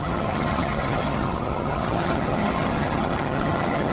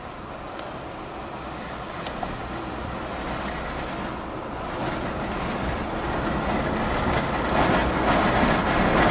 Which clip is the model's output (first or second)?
first